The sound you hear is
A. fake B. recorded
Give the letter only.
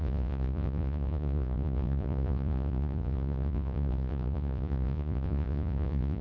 A